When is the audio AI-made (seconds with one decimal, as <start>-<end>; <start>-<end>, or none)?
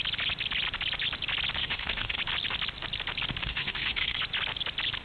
1.6-2.2; 3.4-4.2